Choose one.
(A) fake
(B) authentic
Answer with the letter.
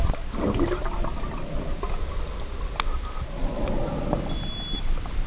B